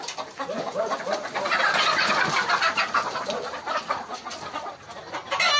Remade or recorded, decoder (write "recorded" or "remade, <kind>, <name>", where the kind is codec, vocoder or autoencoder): recorded